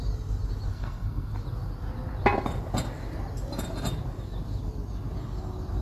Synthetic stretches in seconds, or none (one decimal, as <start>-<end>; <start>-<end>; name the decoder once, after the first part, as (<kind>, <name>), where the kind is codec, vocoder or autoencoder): 0.7-1.3 (codec, SNAC)

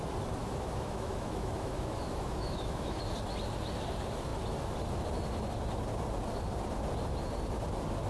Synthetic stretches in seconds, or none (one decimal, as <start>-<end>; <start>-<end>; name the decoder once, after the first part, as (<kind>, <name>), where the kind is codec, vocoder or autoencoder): 0.4-3.0 (autoencoder, DAC-VAE)

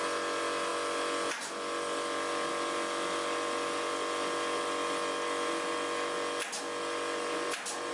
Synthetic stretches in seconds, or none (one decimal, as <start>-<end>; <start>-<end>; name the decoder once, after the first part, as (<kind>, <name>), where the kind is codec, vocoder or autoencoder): none

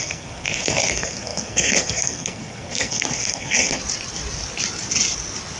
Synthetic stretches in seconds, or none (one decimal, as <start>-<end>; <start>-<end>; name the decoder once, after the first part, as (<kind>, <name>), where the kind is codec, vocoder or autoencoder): 0.0-3.8 (codec, SNAC)

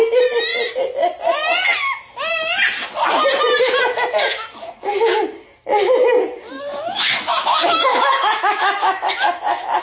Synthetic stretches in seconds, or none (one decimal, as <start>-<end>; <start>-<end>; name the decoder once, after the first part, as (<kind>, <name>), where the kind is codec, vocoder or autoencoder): 6.7-9.8 (autoencoder, DAC-VAE)

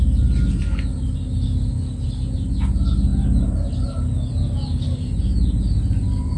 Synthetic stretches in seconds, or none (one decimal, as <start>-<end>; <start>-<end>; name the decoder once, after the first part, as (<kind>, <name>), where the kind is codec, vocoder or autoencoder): none

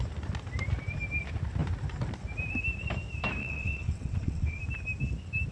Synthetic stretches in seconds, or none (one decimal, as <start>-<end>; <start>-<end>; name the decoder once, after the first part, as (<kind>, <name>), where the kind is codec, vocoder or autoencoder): 3.4-4.6 (vocoder, WaveNeXt)